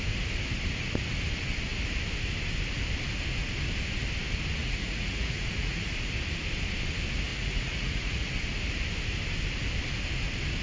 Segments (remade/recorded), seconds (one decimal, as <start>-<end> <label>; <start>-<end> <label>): 0.0-4.6 recorded; 4.6-5.8 remade; 5.8-7.3 recorded; 7.3-8.3 remade; 8.3-10.6 recorded